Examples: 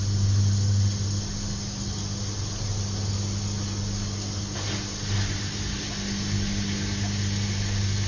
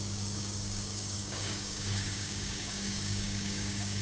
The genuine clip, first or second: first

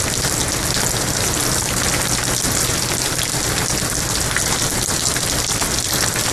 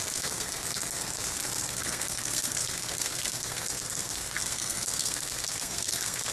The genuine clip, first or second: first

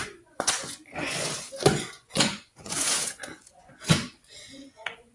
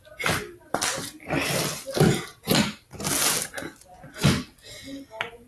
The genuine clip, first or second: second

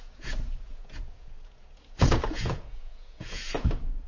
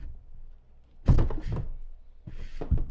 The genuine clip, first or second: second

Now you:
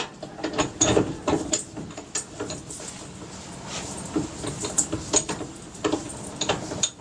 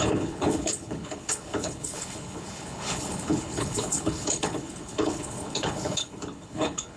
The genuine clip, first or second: first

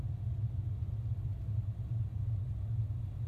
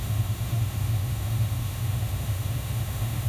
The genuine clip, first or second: first